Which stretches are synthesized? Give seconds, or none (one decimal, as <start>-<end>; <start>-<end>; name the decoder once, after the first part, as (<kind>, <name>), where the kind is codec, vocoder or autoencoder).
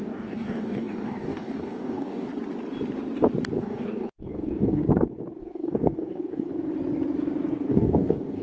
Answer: 0.0-2.3 (codec, DAC); 3.6-4.8; 5.4-6.5; 7.5-8.4